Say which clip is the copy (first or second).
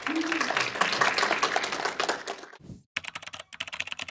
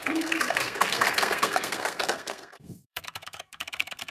second